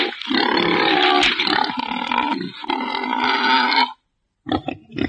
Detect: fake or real real